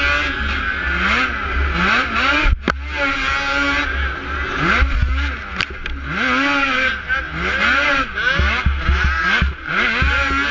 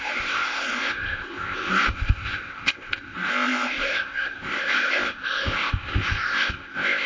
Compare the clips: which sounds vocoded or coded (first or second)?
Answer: second